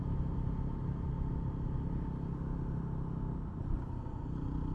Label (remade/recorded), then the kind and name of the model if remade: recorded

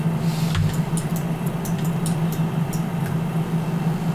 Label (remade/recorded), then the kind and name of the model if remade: recorded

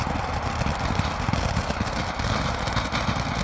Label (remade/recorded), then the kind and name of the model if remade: recorded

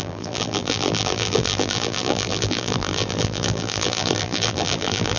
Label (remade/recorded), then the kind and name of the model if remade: remade, vocoder, BigVGAN v2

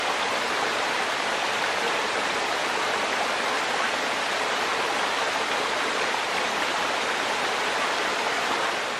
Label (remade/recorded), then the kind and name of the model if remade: remade, vocoder, BigVGAN v2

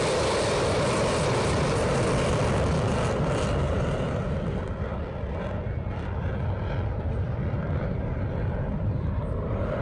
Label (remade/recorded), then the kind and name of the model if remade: remade, vocoder, BigVGAN v2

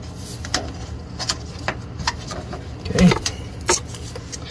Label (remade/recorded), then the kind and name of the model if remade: recorded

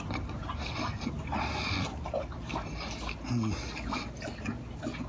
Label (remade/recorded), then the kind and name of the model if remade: recorded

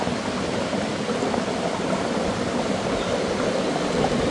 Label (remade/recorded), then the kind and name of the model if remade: remade, vocoder, BigVGAN v2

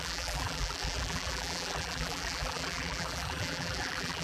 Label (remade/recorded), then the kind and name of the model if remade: remade, vocoder, BigVGAN v2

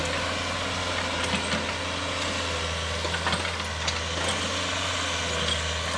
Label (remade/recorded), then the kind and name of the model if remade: recorded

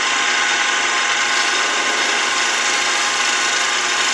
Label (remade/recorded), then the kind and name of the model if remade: recorded